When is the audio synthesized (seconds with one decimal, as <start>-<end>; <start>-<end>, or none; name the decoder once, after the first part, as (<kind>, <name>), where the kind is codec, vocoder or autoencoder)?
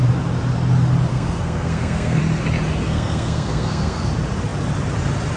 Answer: 1.1-2.2 (codec, SNAC); 2.8-4.1